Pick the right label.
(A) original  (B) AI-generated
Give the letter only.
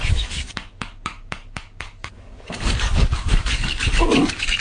B